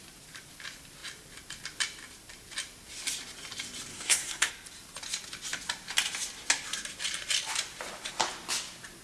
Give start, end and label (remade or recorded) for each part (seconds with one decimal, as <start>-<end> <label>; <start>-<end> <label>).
0.0-3.9 recorded; 3.9-4.5 remade; 4.5-9.0 recorded